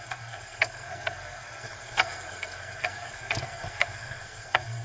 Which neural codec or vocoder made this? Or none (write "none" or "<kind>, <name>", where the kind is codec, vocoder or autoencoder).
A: codec, SNAC